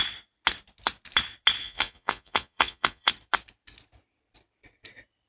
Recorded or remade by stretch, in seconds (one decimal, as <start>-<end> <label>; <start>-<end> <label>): 0.0-1.6 recorded; 1.6-3.1 remade; 3.1-5.3 recorded